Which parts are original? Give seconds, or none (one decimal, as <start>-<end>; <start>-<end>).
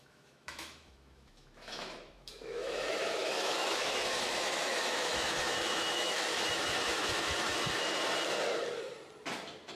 7.5-9.8